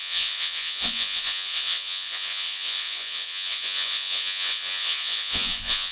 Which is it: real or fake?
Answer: fake